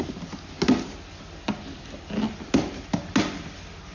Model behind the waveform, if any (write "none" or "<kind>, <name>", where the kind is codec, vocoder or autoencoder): none